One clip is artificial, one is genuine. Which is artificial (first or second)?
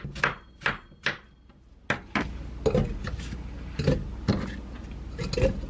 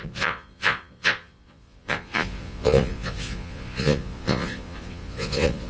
second